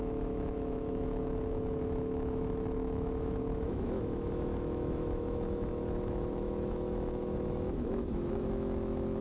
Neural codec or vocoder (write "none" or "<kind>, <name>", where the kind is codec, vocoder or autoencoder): autoencoder, DAC-VAE